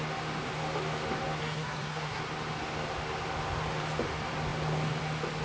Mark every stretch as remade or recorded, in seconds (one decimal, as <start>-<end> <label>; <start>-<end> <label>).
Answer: 0.0-1.4 recorded; 1.4-2.2 remade; 2.2-5.4 recorded